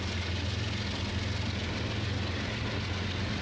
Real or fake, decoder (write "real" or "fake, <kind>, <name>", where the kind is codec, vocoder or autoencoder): real